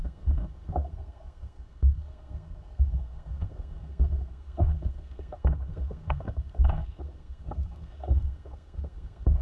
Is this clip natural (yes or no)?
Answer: no